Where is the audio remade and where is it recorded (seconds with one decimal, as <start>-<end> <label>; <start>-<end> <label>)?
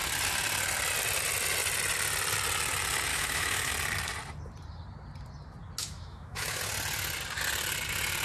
0.0-3.1 recorded; 3.1-3.7 remade; 3.7-5.8 recorded; 5.8-6.6 remade; 6.6-8.2 recorded